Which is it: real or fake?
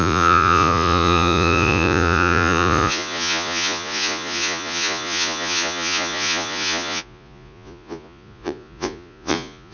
fake